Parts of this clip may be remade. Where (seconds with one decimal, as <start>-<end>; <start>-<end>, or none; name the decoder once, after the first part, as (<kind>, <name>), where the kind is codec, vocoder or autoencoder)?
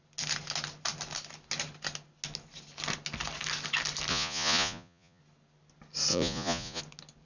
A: 4.1-5.2 (vocoder, Vocos); 6.1-6.8